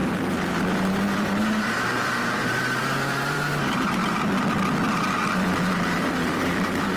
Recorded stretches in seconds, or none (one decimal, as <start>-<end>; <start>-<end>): 4.0-6.1

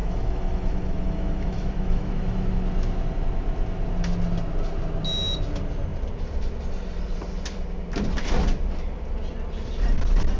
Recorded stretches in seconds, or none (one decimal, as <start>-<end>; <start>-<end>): 2.5-10.4

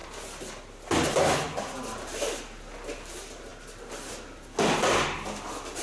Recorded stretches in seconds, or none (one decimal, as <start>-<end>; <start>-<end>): 0.0-5.8

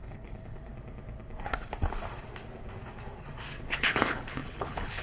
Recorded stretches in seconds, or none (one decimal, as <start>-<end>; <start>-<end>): 0.7-3.7

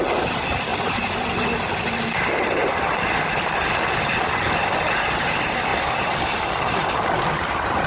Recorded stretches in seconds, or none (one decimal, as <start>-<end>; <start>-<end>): 0.0-0.7; 1.6-7.9

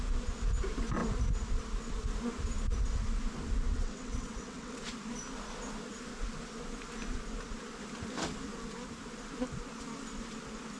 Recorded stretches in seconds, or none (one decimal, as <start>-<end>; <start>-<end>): 0.0-3.7; 4.8-10.8